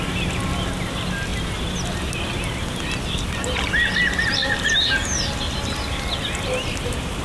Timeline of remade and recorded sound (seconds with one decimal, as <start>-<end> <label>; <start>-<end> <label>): 0.0-4.4 recorded; 4.4-6.2 remade; 6.2-7.2 recorded